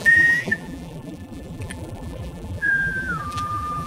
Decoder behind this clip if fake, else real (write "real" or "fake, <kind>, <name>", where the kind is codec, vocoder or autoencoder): fake, vocoder, BigVGAN v2